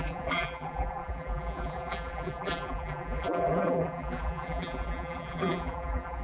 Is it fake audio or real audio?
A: fake